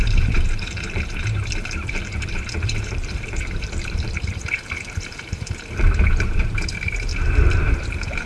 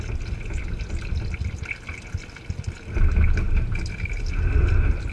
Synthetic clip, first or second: first